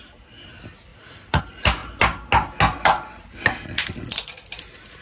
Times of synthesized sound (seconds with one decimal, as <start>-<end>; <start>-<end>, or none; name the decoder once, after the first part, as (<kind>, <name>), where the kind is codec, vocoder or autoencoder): 0.9-1.4 (vocoder, Vocos)